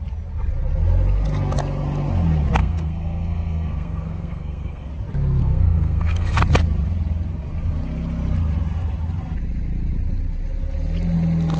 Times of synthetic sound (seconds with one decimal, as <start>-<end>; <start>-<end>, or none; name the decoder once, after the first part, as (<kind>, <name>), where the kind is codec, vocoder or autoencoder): 2.6-4.9 (codec, SNAC); 5.4-6.4